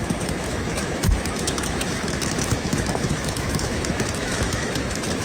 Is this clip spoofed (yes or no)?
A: yes